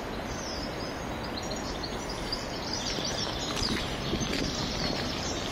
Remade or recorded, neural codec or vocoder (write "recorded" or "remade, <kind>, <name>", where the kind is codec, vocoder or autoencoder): remade, vocoder, BigVGAN v2